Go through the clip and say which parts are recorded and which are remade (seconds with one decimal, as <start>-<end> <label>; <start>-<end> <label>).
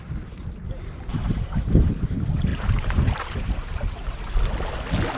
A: 0.0-1.1 recorded; 1.1-1.9 remade; 1.9-2.5 recorded; 2.5-4.3 remade; 4.3-5.2 recorded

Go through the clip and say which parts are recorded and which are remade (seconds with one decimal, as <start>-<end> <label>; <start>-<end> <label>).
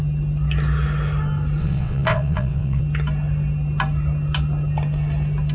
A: 0.0-1.6 recorded; 1.6-2.8 remade; 2.8-5.5 recorded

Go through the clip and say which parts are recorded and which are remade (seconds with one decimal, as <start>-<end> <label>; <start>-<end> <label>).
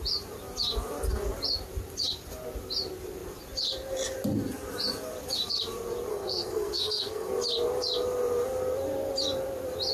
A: 0.0-6.1 recorded; 6.1-7.3 remade; 7.3-9.9 recorded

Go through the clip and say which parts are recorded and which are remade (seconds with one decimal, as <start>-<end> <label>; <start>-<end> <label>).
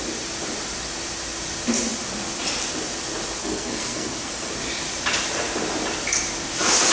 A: 0.0-3.4 recorded; 3.4-4.5 remade; 4.5-6.9 recorded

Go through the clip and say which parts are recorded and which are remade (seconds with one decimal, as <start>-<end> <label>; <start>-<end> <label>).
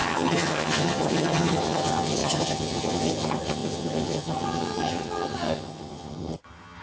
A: 0.0-6.8 remade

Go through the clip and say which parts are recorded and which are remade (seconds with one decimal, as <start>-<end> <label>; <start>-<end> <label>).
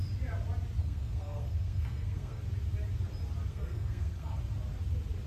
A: 0.0-0.8 recorded; 0.8-2.4 remade; 2.4-3.5 recorded; 3.5-4.4 remade; 4.4-5.3 recorded